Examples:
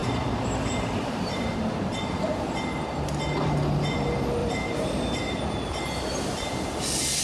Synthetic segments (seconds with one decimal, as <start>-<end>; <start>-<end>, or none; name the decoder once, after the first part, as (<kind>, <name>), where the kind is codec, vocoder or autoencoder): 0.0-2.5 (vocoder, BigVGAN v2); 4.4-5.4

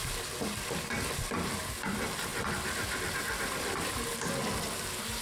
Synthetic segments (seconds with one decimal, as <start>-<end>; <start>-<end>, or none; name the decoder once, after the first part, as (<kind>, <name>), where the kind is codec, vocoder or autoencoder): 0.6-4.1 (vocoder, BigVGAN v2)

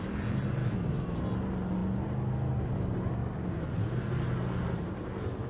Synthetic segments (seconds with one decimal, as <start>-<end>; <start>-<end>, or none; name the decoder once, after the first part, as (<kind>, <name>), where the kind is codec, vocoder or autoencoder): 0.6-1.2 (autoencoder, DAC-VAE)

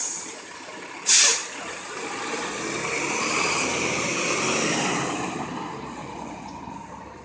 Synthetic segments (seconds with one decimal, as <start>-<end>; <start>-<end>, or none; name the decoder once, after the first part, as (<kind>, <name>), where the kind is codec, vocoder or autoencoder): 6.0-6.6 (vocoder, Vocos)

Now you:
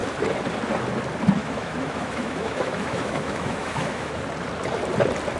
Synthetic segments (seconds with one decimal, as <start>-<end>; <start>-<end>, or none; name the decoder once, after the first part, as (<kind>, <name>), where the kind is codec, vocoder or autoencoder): 1.4-4.2 (autoencoder, DAC-VAE)